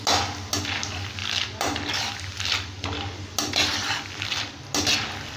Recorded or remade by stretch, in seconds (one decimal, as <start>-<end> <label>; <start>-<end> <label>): 0.0-5.4 recorded